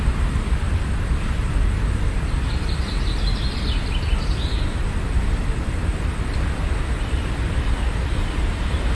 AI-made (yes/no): no